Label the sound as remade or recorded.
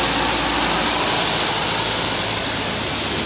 recorded